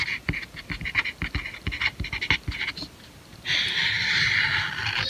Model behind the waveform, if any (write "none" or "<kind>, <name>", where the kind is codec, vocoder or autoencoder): none